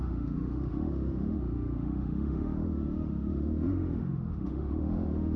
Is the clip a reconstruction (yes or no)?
yes